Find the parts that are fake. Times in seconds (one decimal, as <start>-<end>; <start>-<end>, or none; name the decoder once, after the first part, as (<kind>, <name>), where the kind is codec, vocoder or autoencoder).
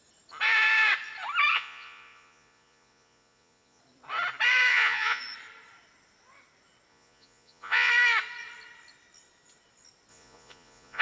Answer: 1.5-3.8 (vocoder, Vocos); 4.7-5.2; 6.9-7.9; 10.1-11.0